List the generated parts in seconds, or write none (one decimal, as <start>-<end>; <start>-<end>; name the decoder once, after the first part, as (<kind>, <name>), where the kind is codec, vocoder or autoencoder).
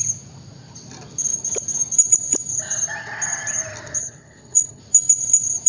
4.0-4.8 (codec, HILCodec)